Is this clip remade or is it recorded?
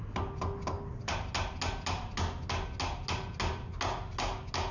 recorded